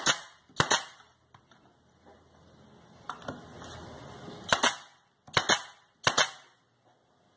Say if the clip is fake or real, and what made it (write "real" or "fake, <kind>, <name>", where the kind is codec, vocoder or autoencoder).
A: real